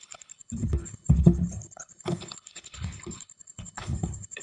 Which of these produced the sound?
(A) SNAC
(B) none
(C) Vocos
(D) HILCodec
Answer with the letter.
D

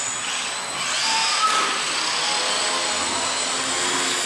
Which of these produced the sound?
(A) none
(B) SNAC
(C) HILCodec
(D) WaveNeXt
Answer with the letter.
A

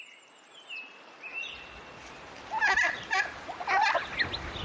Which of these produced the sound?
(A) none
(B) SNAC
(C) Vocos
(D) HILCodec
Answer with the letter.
A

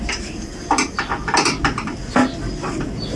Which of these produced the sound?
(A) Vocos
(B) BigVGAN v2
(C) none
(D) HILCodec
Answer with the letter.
C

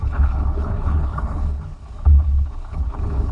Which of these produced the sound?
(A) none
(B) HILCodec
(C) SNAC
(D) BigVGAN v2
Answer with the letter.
B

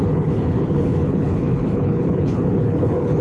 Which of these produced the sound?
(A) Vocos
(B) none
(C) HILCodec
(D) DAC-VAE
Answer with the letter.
C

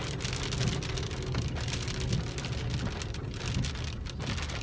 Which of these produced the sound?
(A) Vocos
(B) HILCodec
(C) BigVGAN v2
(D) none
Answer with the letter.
D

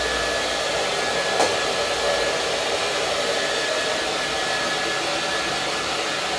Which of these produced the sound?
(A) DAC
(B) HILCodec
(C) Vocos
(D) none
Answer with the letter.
D